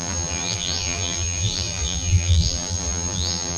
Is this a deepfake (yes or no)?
yes